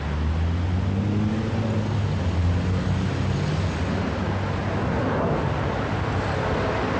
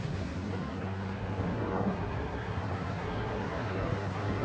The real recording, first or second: first